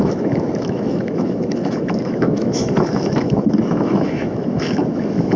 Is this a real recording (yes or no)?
no